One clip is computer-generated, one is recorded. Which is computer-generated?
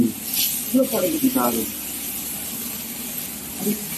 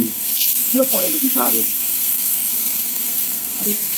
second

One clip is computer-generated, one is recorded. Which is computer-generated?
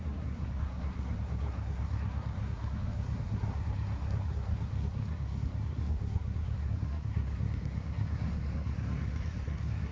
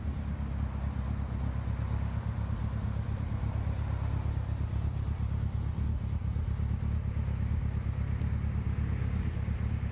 first